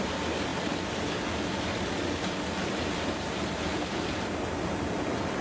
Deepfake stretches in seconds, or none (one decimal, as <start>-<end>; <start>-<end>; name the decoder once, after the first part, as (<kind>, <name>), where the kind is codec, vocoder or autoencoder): none

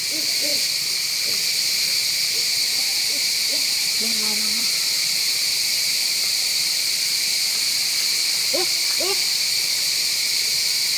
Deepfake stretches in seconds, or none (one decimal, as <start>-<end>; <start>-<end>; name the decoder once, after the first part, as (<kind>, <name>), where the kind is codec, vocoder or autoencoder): 2.6-7.8 (vocoder, BigVGAN v2)

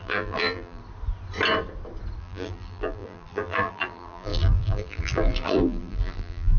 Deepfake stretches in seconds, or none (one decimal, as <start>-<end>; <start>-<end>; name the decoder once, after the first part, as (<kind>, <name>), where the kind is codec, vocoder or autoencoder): 0.0-0.8 (vocoder, BigVGAN v2); 2.2-6.6

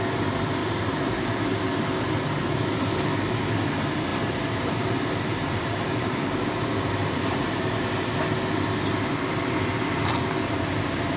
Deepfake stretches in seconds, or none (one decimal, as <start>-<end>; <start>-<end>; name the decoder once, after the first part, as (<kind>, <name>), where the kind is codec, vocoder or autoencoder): 0.6-1.6 (vocoder, BigVGAN v2); 4.1-8.1

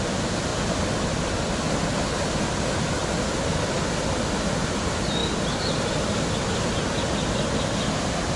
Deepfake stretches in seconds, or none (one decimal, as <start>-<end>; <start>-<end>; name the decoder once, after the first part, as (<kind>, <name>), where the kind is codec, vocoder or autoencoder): none

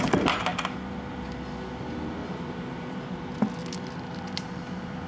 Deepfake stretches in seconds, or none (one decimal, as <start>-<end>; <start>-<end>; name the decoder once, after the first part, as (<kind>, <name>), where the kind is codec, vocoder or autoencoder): 2.2-3.0 (vocoder, BigVGAN v2); 3.6-5.1